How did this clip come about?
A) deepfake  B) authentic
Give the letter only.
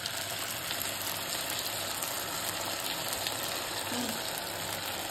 B